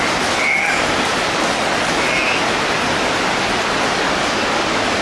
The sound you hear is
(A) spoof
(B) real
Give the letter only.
B